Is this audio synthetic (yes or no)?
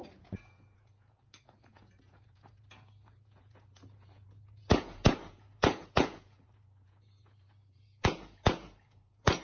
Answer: yes